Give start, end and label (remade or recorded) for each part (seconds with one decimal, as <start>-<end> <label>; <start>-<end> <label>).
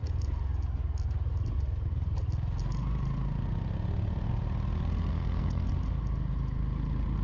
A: 0.0-5.1 recorded; 5.1-5.7 remade; 5.7-7.2 recorded